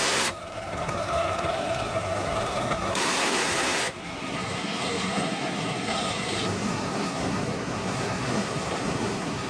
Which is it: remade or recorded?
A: remade